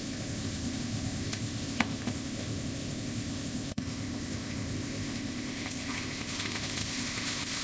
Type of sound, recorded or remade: remade